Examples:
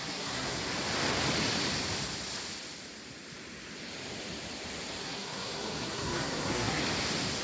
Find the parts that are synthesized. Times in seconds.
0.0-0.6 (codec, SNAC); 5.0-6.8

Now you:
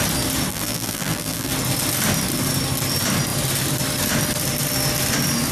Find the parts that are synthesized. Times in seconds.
0.5-1.5 (vocoder, BigVGAN v2)

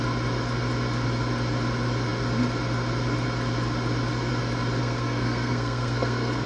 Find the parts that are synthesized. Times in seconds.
4.8-6.5 (codec, SNAC)

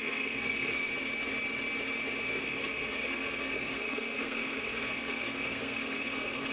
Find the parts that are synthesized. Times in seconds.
0.0-0.9 (codec, SNAC); 2.2-6.5